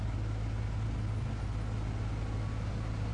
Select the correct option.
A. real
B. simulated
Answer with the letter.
A